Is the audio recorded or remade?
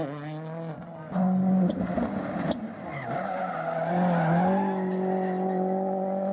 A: recorded